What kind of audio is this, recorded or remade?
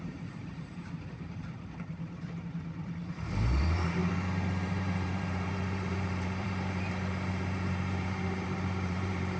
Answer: remade